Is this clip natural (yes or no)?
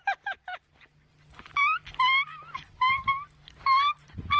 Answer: no